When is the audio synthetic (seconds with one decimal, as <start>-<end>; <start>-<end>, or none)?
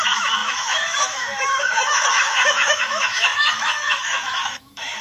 0.0-5.0